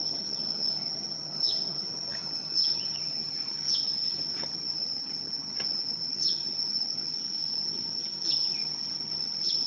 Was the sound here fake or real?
fake